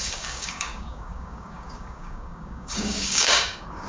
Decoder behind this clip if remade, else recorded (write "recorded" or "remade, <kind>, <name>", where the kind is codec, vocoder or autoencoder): remade, codec, DAC